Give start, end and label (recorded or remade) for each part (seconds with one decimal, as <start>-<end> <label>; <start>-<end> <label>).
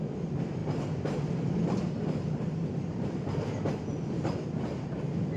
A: 0.0-5.4 recorded